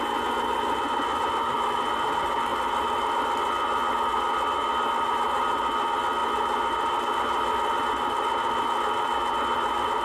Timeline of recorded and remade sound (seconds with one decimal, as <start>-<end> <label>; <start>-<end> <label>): 0.0-10.0 recorded